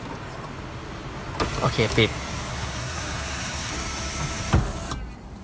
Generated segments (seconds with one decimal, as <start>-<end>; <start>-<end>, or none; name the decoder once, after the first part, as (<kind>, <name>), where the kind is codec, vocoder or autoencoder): 2.5-3.7 (codec, SNAC)